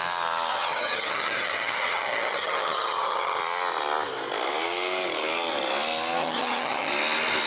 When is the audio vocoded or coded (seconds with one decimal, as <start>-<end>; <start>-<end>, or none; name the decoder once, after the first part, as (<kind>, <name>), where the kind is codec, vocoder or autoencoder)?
0.5-3.4 (vocoder, HiFi-GAN); 6.2-6.9